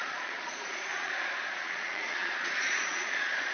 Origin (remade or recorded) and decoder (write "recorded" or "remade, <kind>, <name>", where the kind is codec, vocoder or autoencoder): remade, vocoder, Vocos